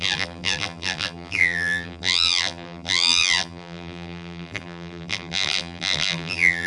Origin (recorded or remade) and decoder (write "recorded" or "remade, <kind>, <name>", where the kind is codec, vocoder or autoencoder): remade, vocoder, BigVGAN v2